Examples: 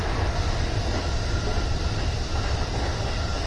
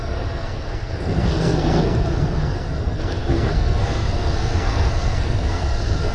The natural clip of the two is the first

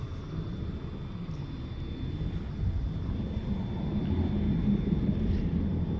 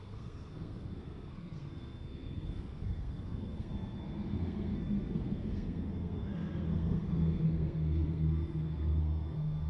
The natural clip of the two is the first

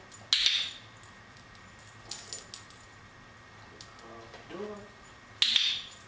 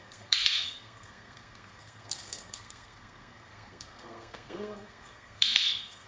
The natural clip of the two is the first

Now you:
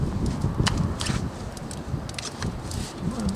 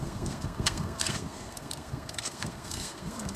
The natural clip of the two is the first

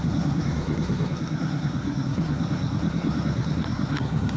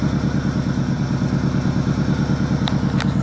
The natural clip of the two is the second